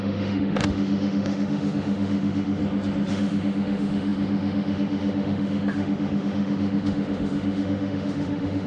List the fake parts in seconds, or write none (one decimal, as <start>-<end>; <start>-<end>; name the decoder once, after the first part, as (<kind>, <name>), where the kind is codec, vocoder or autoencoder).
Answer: 0.0-2.6 (autoencoder, DAC-VAE); 3.1-8.7